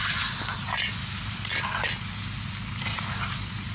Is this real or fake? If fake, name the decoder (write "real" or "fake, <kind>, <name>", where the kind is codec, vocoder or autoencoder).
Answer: real